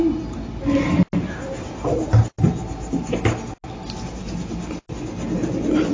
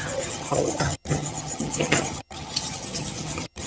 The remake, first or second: second